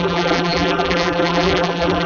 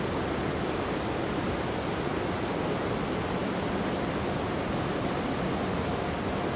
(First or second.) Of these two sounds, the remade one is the first